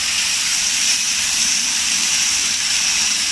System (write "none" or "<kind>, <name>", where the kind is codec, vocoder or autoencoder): vocoder, BigVGAN v2